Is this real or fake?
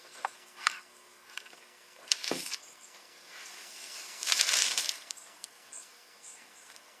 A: fake